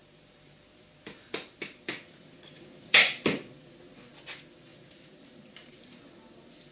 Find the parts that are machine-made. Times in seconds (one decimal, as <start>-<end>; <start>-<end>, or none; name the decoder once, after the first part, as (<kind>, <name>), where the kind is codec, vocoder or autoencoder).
0.0-3.0 (vocoder, BigVGAN v2); 4.7-5.9